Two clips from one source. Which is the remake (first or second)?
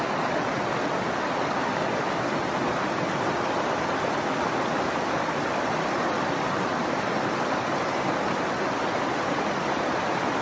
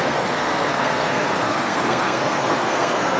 second